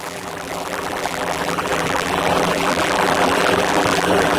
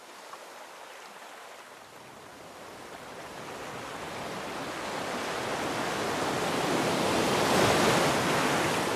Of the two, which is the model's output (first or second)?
first